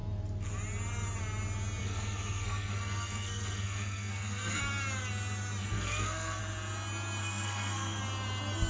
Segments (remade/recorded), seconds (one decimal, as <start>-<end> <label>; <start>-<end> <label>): 0.0-1.8 recorded; 1.8-4.6 remade; 4.6-5.6 recorded; 5.6-6.4 remade; 6.4-7.2 recorded; 7.2-8.0 remade; 8.0-8.7 recorded